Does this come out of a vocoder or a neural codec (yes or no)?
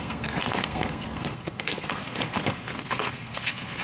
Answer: yes